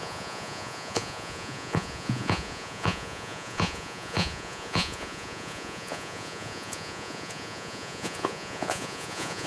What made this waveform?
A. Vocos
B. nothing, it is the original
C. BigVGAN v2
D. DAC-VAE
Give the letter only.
A